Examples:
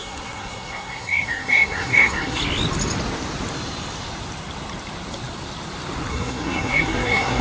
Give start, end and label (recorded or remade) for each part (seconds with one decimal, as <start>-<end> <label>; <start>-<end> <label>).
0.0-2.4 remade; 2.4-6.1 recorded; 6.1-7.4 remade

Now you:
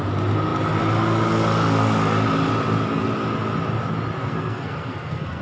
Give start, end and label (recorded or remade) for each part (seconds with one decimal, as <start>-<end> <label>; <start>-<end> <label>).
0.0-4.2 recorded; 4.2-5.4 remade

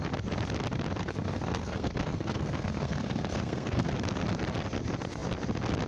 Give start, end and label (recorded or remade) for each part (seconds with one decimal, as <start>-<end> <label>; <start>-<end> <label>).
0.0-1.0 recorded; 1.0-3.9 remade; 3.9-5.9 recorded

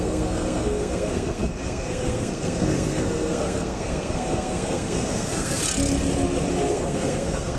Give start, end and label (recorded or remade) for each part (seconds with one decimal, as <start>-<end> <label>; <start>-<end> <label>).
0.0-5.6 remade; 5.6-6.7 recorded; 6.7-7.6 remade